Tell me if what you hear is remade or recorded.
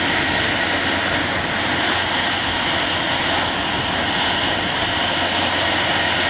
recorded